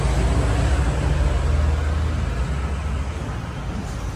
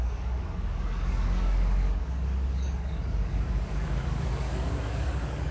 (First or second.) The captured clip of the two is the first